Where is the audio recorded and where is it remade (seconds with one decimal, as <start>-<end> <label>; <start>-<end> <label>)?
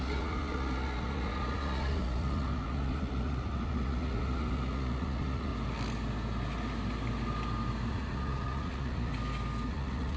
0.0-5.5 remade; 5.5-7.9 recorded; 7.9-9.1 remade; 9.1-9.7 recorded; 9.7-10.2 remade